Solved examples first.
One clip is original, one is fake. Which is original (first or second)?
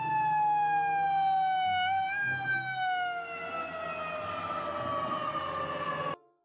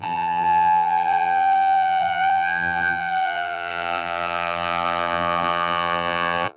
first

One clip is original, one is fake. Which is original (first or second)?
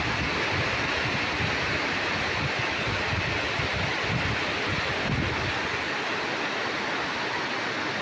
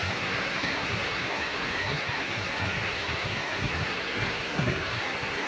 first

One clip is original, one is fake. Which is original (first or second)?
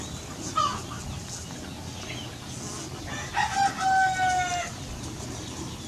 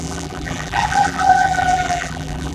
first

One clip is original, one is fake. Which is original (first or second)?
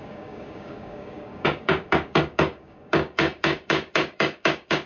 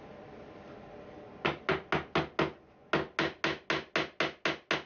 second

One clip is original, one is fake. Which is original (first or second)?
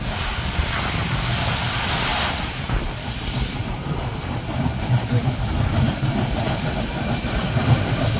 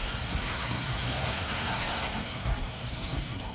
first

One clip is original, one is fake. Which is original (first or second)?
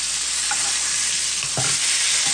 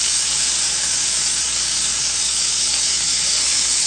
first